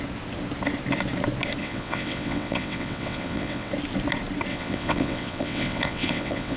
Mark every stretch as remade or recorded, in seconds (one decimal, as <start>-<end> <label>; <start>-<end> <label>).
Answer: 0.0-1.6 recorded; 1.6-3.7 remade; 3.7-4.5 recorded; 4.5-6.6 remade